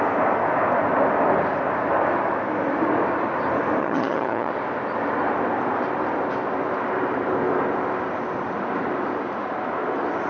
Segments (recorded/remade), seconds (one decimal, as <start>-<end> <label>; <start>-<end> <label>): 0.0-3.8 recorded; 3.8-4.5 remade; 4.5-10.3 recorded